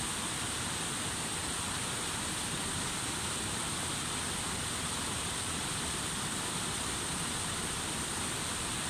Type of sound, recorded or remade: recorded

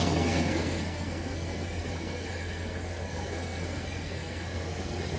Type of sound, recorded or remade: remade